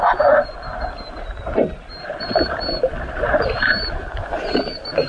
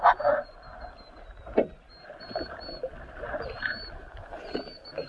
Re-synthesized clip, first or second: first